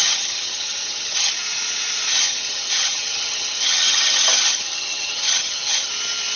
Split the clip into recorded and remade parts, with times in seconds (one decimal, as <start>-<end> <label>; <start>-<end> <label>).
0.0-1.3 remade; 1.3-2.1 recorded; 2.1-5.9 remade; 5.9-6.4 recorded